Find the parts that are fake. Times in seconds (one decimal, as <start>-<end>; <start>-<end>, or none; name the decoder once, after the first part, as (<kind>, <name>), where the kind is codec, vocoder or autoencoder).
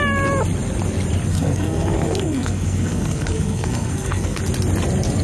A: 1.3-4.4 (codec, SNAC)